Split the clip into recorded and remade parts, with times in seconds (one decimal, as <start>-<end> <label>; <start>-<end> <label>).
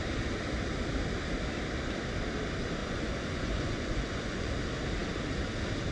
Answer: 0.0-2.8 recorded; 2.8-4.5 remade; 4.5-5.9 recorded